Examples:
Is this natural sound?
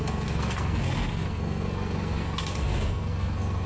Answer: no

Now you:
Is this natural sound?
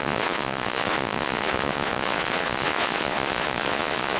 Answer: no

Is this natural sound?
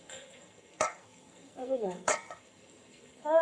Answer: no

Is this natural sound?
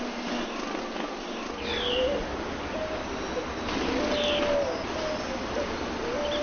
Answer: yes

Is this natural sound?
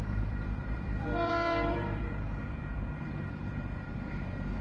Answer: no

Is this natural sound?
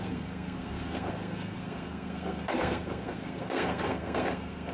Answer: no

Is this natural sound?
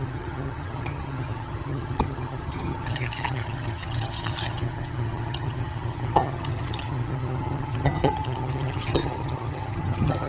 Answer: no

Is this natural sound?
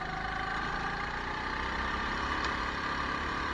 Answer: yes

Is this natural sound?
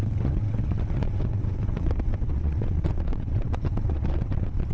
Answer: no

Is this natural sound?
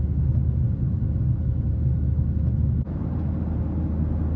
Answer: yes